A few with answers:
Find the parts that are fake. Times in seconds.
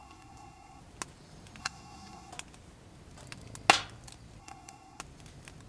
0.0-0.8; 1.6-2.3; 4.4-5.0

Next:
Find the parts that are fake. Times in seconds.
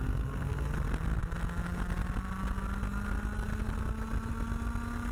none